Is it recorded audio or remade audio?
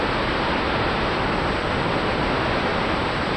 recorded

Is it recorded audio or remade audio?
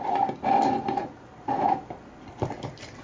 remade